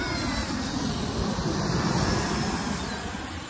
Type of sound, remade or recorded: remade